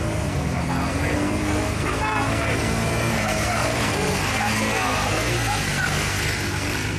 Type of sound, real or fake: fake